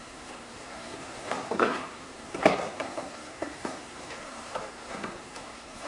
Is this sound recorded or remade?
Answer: remade